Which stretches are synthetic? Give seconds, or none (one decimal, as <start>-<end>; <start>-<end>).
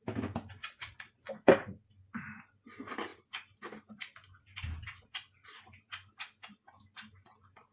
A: 0.6-1.3